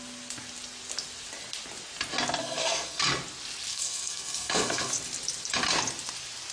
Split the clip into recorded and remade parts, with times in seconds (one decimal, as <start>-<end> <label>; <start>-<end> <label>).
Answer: 0.0-2.4 recorded; 2.4-3.0 remade; 3.0-3.7 recorded; 3.7-4.9 remade; 4.9-6.5 recorded